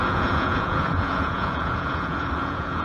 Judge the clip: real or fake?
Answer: fake